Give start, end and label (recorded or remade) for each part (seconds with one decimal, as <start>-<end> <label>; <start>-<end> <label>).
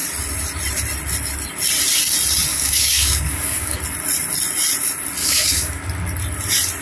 0.0-2.5 recorded; 2.5-3.8 remade; 3.8-5.2 recorded; 5.2-5.8 remade; 5.8-6.8 recorded